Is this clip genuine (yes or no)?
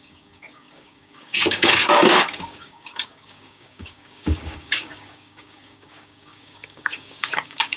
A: no